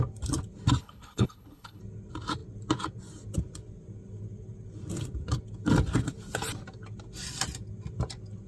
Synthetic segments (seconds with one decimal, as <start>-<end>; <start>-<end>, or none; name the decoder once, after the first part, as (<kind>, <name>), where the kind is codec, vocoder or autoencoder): 0.8-1.8 (codec, HILCodec)